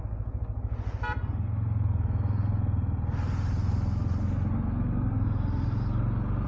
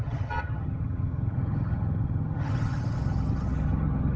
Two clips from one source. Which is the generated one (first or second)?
second